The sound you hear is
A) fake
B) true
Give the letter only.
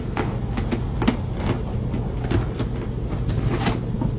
B